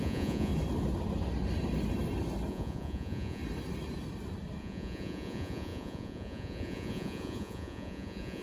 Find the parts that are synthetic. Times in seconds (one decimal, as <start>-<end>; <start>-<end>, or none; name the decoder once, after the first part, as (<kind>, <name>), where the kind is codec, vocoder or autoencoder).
0.0-0.5 (vocoder, Vocos); 2.5-3.4; 4.6-8.4